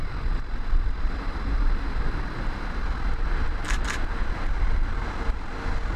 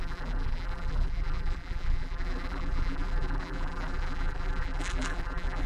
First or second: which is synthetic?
second